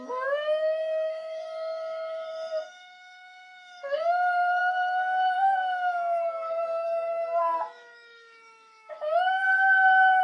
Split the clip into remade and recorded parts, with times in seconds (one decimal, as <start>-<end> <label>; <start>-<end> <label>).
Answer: 0.0-10.2 remade